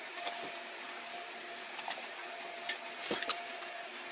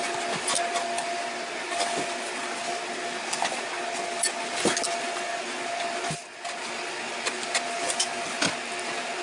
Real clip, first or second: second